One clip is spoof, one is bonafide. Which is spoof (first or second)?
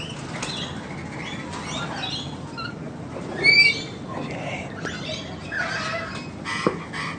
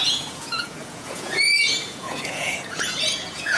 second